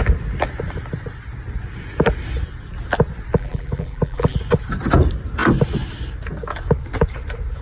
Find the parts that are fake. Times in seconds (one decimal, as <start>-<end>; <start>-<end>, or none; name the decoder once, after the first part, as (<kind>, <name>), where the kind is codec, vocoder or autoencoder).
3.3-4.4 (vocoder, BigVGAN v2)